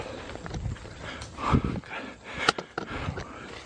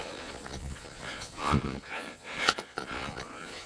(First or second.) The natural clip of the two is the first